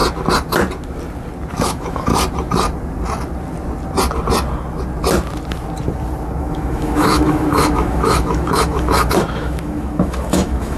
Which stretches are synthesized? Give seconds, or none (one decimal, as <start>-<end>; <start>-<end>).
1.5-2.1; 6.4-10.8